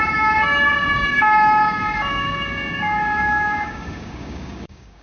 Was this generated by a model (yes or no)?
yes